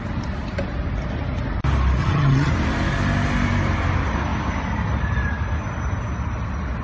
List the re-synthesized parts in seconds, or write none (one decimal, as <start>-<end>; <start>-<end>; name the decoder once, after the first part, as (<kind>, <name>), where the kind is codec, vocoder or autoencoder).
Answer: 2.0-2.5 (vocoder, HiFi-GAN)